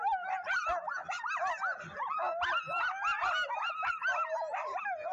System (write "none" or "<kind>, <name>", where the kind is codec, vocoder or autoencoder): none